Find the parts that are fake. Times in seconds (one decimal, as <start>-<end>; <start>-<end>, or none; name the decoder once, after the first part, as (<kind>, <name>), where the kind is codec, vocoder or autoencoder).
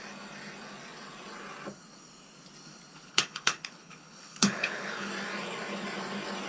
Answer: 3.1-5.1 (codec, HILCodec)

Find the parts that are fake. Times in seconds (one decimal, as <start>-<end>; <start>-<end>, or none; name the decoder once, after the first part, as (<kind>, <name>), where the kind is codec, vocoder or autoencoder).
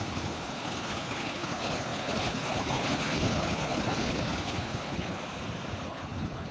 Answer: 0.0-5.2 (codec, HILCodec); 5.8-6.5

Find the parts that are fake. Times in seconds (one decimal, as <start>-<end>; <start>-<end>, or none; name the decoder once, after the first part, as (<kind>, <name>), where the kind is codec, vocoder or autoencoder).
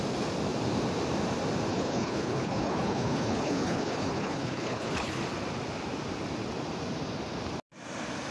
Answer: 1.7-5.2 (codec, HILCodec)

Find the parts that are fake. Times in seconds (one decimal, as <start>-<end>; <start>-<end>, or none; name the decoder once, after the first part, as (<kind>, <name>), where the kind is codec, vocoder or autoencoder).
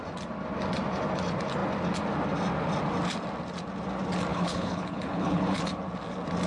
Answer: 4.3-5.6 (codec, HILCodec)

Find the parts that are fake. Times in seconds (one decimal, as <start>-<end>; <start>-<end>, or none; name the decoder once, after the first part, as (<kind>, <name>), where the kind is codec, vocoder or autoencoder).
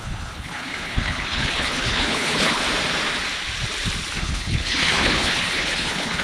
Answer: 0.0-2.6 (codec, HILCodec); 4.2-6.2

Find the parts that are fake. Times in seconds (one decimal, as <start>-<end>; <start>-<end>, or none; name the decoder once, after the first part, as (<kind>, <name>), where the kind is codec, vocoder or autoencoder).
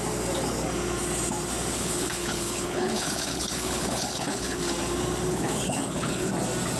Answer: 1.7-4.6 (codec, HILCodec); 5.3-6.3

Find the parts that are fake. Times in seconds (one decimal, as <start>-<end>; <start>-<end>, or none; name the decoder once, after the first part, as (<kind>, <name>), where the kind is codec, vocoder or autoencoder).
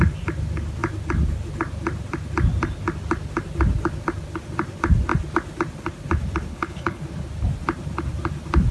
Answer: 6.5-7.0 (codec, HILCodec)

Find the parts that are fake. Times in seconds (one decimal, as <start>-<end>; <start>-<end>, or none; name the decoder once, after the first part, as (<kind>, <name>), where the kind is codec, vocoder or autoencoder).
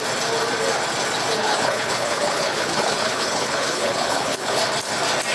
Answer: 1.4-4.6 (codec, HILCodec)